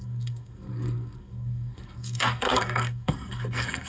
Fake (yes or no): yes